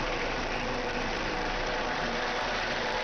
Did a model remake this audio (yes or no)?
yes